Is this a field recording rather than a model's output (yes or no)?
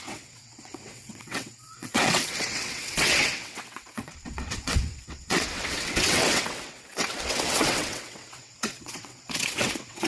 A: no